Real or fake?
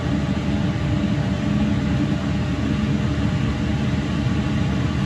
real